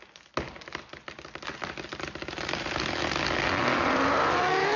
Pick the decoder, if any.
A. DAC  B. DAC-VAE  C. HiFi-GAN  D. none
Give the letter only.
D